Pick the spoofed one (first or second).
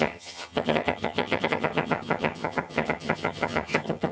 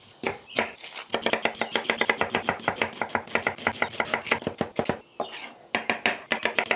first